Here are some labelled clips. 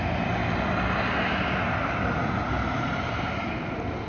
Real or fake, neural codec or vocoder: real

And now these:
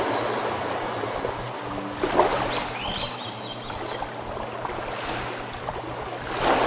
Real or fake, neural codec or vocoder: real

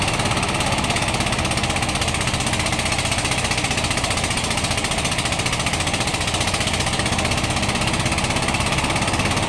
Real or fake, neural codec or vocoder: real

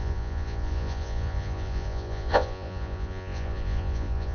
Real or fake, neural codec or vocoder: fake, vocoder, Vocos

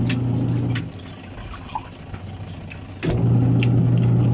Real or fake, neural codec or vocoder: real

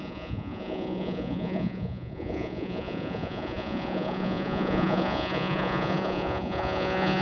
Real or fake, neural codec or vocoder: fake, vocoder, Vocos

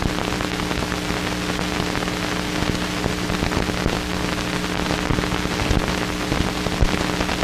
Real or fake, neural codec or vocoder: real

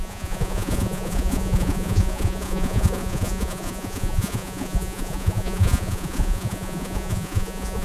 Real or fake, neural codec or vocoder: fake, vocoder, Vocos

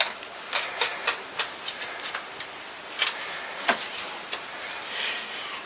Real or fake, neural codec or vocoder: real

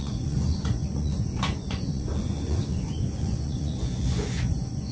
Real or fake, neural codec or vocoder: fake, vocoder, Vocos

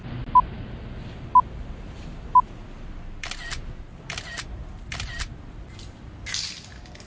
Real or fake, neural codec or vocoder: real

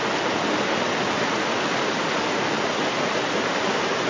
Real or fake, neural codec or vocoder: real